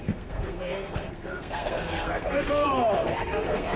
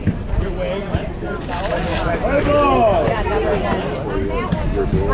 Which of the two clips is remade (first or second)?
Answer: first